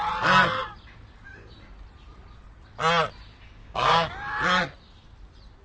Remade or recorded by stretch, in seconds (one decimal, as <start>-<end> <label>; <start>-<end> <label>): 0.0-3.6 recorded; 3.6-4.1 remade; 4.1-5.6 recorded